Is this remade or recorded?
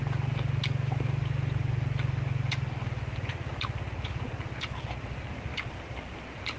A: recorded